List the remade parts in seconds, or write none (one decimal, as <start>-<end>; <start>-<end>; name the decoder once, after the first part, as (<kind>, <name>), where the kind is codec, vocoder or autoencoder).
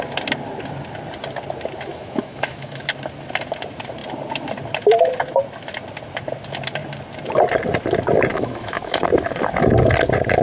1.9-2.8 (autoencoder, DAC-VAE); 8.3-9.0